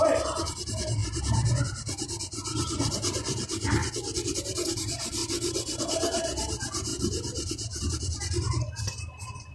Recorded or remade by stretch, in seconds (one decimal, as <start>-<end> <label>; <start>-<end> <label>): 0.0-3.8 remade; 3.8-4.4 recorded; 4.4-5.2 remade; 5.2-5.8 recorded; 5.8-9.5 remade